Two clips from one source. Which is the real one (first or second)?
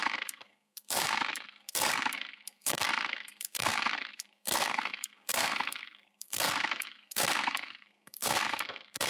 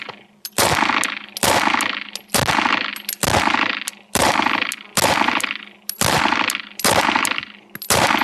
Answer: second